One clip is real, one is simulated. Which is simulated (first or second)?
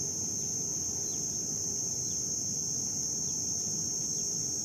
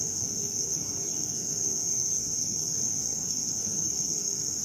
second